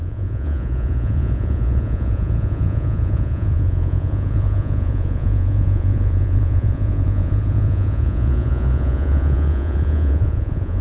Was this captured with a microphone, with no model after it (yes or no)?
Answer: no